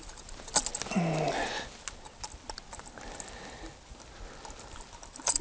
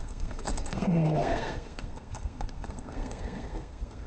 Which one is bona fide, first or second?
first